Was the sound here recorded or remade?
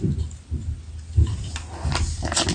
recorded